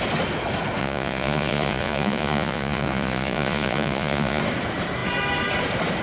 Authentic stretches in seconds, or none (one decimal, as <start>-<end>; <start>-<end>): 0.0-0.8; 4.4-6.0